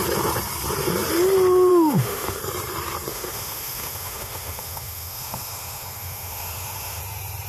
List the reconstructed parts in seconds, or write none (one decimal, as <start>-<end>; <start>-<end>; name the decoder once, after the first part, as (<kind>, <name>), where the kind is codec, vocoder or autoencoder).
1.7-2.4 (autoencoder, DAC-VAE); 3.1-7.0